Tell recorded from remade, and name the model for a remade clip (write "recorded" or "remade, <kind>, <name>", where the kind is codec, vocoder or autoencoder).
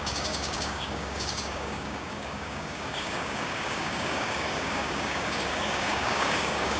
remade, codec, DAC